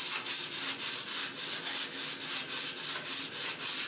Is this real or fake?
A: real